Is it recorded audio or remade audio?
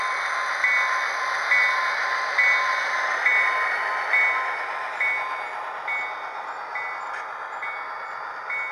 recorded